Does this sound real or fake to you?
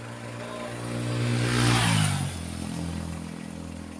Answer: real